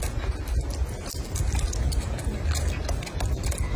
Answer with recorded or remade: recorded